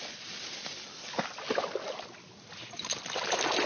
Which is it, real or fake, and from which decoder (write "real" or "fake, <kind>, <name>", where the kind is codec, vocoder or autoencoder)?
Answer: real